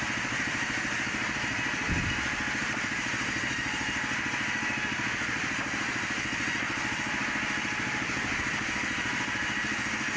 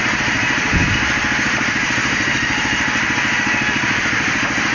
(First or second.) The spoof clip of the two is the second